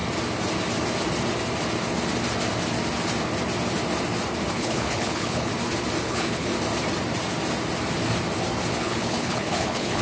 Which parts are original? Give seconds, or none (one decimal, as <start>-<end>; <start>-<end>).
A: 0.0-4.5; 5.5-6.0; 6.5-8.8